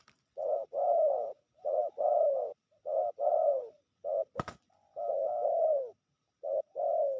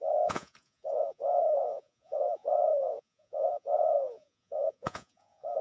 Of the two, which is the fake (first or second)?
second